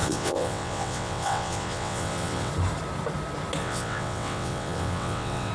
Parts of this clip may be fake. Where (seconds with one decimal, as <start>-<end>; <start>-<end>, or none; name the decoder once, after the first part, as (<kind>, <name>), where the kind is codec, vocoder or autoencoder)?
0.0-2.5 (vocoder, WaveNeXt); 3.6-5.5